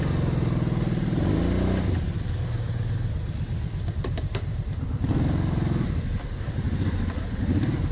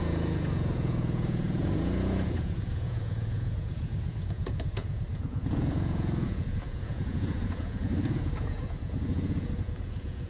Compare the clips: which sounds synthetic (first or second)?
second